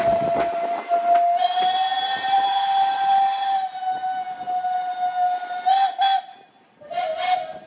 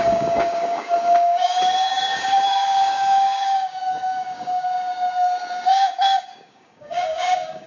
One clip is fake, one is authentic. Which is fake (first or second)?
second